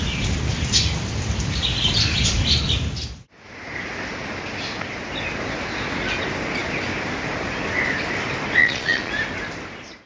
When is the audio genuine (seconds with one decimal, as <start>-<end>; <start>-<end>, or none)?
0.0-8.6; 9.1-10.1